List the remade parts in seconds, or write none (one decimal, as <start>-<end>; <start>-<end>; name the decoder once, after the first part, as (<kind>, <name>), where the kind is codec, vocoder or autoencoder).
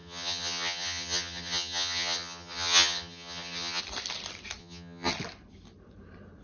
0.0-3.8 (vocoder, HiFi-GAN); 4.6-5.1